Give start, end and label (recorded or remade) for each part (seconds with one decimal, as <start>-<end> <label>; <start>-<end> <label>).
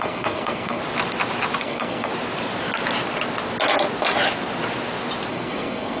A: 0.0-0.8 remade; 0.8-1.6 recorded; 1.6-2.1 remade; 2.1-5.3 recorded; 5.3-6.0 remade